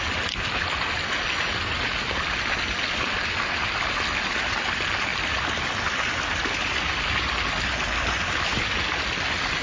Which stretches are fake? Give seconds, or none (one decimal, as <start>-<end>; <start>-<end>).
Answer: none